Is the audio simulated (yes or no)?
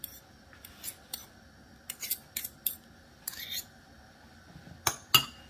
no